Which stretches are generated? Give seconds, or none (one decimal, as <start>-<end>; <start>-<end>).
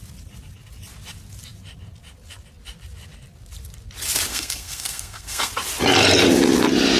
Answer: 4.3-5.5